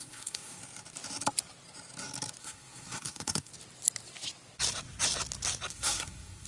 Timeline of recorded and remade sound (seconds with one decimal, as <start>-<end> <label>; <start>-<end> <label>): 0.0-0.6 remade; 0.6-2.4 recorded; 2.4-3.5 remade; 3.5-5.7 recorded; 5.7-6.5 remade